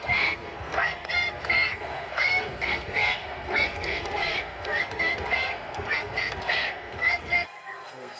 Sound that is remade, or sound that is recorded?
remade